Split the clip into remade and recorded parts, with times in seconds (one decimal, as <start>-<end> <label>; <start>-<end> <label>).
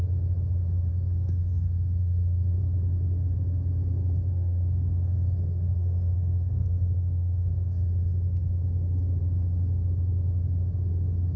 0.0-0.9 recorded; 0.9-2.6 remade; 2.6-4.3 recorded; 4.3-7.9 remade; 7.9-11.4 recorded